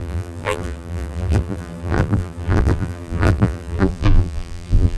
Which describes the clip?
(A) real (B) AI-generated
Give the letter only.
B